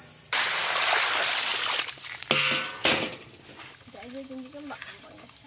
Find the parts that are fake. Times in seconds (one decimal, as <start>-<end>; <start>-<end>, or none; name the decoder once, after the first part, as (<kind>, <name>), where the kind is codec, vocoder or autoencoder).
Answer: none